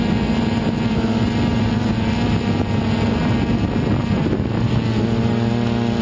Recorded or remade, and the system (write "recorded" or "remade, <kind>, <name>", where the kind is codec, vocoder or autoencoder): recorded